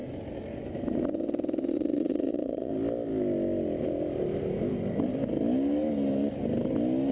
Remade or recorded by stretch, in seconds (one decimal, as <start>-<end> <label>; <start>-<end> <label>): 0.0-1.7 recorded; 1.7-2.7 remade; 2.7-7.1 recorded

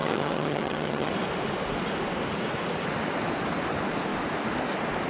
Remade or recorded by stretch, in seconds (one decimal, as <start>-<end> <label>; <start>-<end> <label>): 0.0-1.1 remade; 1.1-5.1 recorded

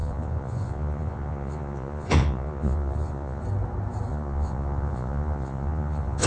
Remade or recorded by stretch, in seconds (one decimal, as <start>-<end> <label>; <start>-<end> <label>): 0.0-3.4 remade; 3.4-4.1 recorded; 4.1-6.3 remade

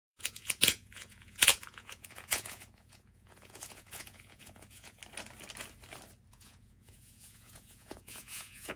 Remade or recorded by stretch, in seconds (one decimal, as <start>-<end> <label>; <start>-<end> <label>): 0.0-5.0 remade; 5.0-6.3 recorded; 6.3-8.8 remade

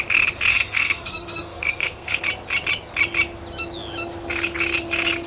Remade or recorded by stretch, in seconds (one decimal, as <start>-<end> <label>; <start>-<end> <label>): 0.0-0.5 recorded; 0.5-2.2 remade; 2.2-5.3 recorded

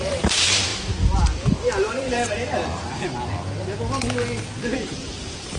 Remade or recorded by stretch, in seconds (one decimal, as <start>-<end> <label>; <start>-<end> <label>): 0.0-0.7 remade; 0.7-1.6 recorded; 1.6-2.6 remade; 2.6-4.8 recorded; 4.8-5.6 remade